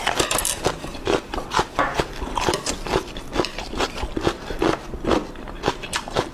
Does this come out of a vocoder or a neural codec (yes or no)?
no